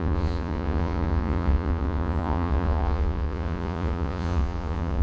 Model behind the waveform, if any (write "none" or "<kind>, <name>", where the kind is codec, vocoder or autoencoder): vocoder, Vocos